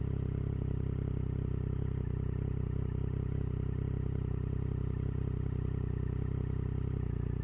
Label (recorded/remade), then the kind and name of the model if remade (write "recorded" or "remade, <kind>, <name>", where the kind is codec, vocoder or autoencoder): recorded